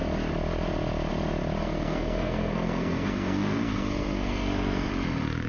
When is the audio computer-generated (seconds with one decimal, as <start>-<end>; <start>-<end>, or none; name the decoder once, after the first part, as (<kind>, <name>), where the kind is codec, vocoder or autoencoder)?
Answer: 1.6-4.9 (codec, SNAC)